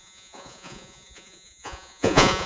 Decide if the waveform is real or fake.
fake